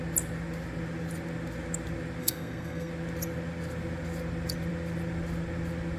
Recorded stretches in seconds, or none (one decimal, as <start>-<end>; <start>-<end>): 0.0-2.2; 2.9-6.0

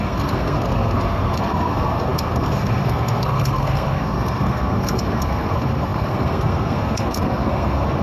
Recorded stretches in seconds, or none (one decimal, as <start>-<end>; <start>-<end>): none

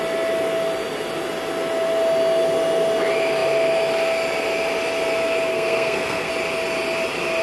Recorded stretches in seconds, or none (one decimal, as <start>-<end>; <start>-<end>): 0.0-5.5; 6.3-7.4